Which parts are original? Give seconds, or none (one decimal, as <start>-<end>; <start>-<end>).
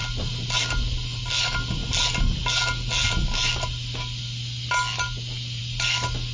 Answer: 0.0-6.3